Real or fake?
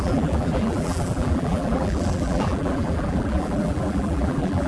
fake